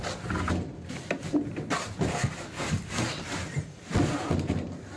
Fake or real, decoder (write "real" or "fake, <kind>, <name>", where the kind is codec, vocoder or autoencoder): real